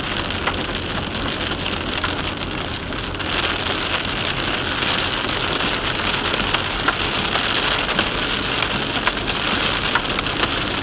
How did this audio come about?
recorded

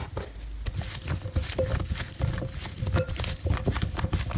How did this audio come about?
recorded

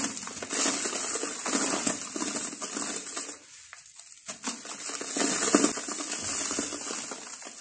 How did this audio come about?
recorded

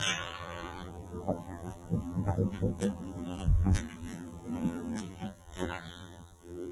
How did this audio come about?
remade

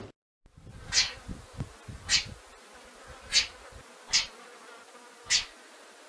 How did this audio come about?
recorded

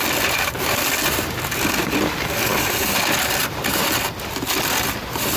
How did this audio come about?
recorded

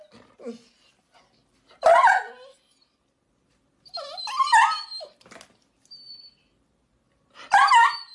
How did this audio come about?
recorded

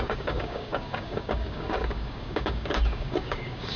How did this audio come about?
remade